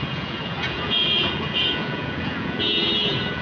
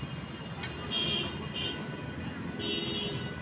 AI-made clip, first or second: first